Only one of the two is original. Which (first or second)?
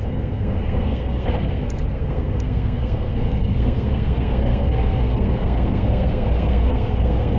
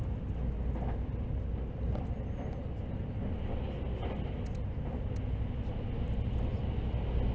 second